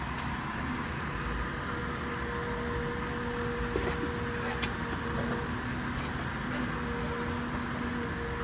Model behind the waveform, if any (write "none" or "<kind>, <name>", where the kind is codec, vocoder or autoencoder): none